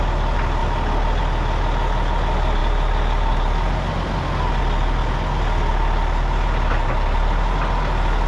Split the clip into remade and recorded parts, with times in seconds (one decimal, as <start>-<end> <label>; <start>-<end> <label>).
0.0-8.3 recorded